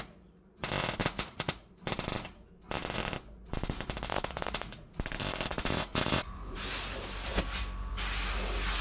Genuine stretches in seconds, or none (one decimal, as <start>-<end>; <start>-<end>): 0.0-1.0; 1.7-4.1; 5.0-5.5; 6.6-8.8